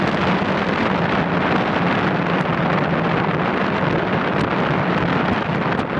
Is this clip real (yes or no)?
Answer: yes